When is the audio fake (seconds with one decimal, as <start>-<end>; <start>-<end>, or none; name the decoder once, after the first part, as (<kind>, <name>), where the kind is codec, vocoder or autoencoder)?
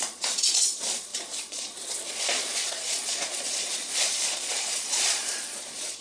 0.0-6.0 (vocoder, Vocos)